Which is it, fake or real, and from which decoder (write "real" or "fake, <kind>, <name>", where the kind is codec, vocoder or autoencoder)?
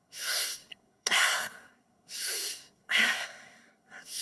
fake, codec, SNAC